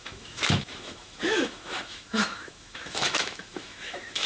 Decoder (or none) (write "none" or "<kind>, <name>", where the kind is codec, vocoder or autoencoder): autoencoder, DAC-VAE